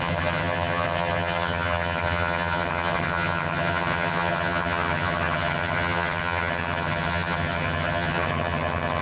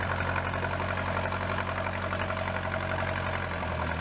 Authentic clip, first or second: second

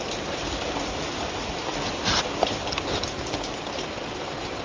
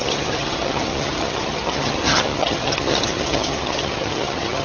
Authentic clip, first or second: first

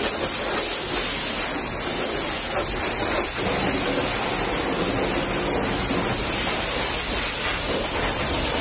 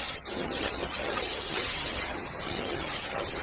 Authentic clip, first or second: first